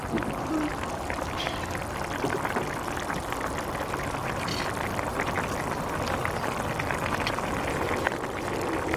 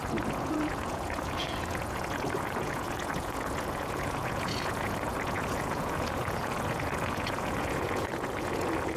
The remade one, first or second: second